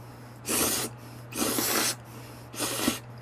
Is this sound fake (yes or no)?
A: no